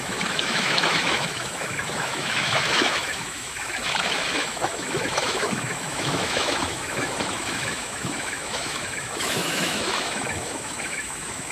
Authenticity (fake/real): fake